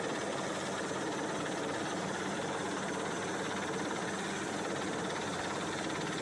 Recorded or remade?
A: recorded